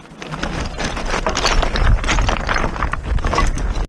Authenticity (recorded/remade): recorded